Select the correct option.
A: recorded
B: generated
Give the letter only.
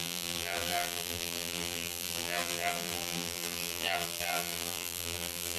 B